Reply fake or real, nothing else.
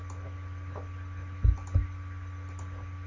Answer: real